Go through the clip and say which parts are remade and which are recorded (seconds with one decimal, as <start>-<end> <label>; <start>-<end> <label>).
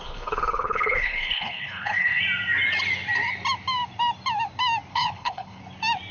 0.0-2.2 remade; 2.2-4.9 recorded; 4.9-5.6 remade; 5.6-6.1 recorded